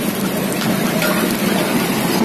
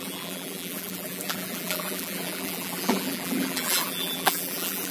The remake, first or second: second